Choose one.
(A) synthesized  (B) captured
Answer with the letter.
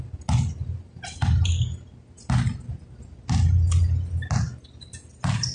B